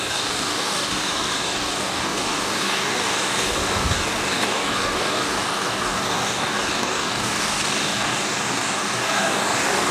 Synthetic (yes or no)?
yes